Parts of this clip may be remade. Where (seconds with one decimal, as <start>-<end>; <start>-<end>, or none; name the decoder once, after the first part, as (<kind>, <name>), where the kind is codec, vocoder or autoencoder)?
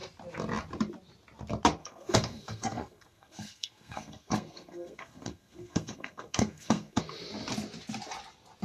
1.8-7.0 (codec, SNAC)